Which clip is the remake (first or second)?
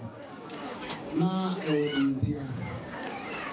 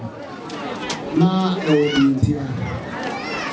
first